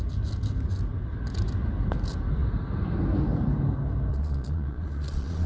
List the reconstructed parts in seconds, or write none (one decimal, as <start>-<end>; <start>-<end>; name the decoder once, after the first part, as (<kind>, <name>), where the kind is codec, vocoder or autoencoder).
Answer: 4.1-5.5 (vocoder, Vocos)